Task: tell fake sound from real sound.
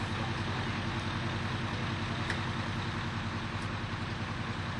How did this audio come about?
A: real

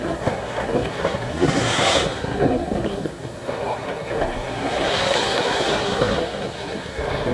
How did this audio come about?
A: fake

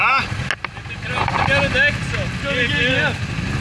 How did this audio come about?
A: real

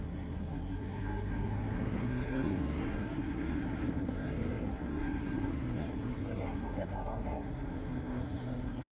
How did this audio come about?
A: fake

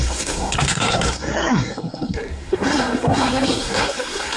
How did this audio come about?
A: fake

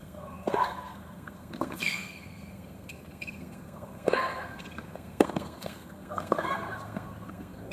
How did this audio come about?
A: fake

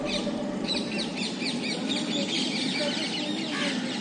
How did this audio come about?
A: real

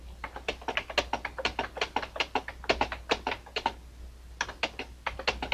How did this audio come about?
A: real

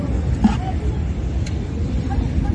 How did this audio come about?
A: real